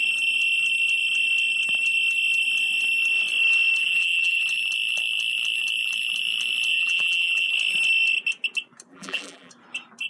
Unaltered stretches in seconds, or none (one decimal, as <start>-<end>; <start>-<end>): 0.0-3.8; 4.4-6.7; 7.5-8.9; 9.5-10.1